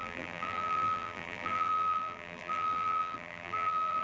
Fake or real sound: fake